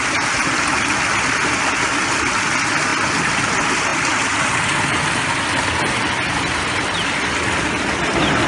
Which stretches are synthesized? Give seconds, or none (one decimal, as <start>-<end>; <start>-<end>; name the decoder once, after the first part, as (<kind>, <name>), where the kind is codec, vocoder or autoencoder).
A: none